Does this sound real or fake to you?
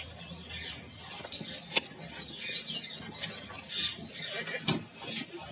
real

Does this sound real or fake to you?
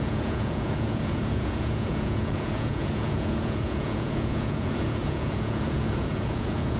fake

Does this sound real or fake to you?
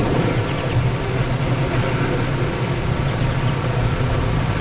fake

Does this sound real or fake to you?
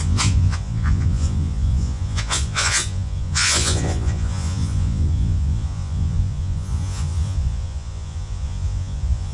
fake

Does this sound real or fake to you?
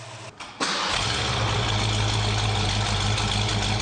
real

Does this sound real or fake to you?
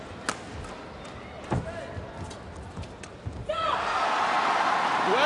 real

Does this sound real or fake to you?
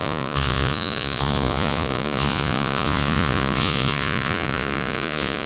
fake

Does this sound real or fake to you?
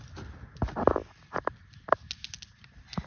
real